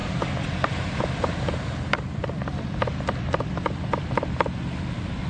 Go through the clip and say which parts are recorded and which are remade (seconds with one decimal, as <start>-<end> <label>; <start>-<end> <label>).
0.0-5.3 remade